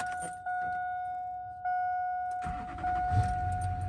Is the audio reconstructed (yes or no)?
no